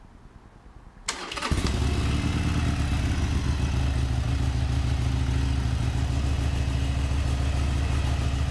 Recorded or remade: recorded